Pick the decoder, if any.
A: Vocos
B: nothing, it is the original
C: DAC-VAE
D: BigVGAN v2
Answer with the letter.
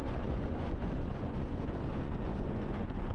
A